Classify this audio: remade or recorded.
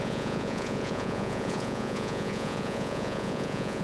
remade